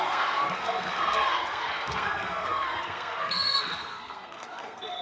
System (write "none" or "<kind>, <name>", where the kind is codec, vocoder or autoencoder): codec, SNAC